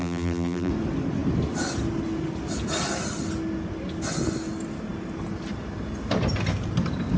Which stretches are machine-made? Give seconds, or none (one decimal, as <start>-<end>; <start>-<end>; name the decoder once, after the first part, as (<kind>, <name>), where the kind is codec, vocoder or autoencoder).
0.0-0.7 (vocoder, BigVGAN v2)